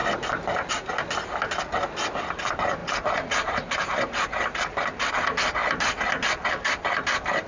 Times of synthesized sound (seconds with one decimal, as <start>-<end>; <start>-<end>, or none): 0.0-0.7